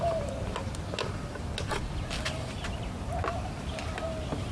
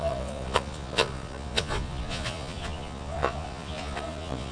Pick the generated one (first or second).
second